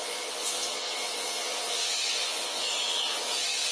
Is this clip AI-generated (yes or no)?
yes